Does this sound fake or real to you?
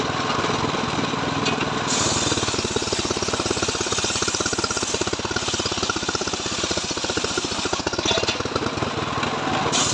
real